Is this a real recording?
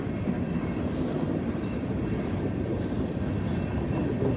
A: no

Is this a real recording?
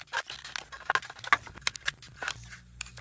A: yes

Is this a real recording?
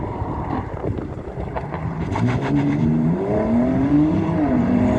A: no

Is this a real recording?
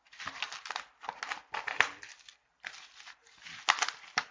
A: yes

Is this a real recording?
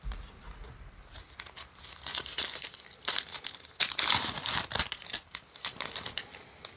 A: no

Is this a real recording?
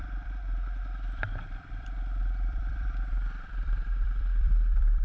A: no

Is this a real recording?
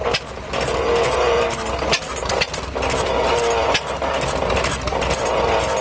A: yes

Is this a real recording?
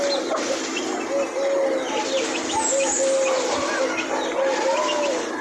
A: yes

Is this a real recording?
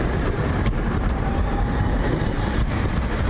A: no